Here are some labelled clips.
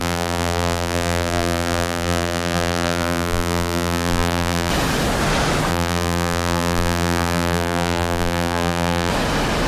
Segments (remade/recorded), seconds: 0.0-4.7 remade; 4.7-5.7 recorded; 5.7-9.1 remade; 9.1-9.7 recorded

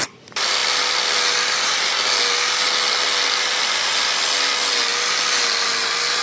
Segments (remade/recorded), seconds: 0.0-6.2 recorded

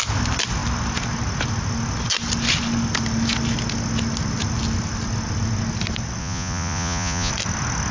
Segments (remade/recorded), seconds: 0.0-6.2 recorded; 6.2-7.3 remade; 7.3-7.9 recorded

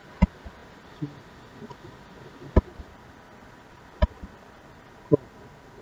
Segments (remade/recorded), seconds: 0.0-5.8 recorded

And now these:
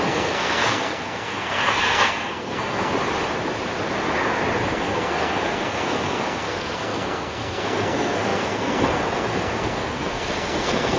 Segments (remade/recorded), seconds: 0.0-2.9 remade; 2.9-4.7 recorded; 4.7-11.0 remade

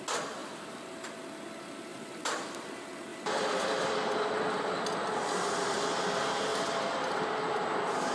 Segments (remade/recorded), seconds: 0.0-0.4 recorded; 0.4-1.2 remade; 1.2-1.9 recorded; 1.9-2.4 remade; 2.4-3.1 recorded; 3.1-4.0 remade; 4.0-6.5 recorded; 6.5-7.2 remade; 7.2-8.1 recorded

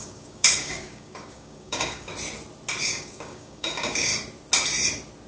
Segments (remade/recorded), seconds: 0.0-2.1 remade; 2.1-2.8 recorded; 2.8-4.1 remade; 4.1-5.3 recorded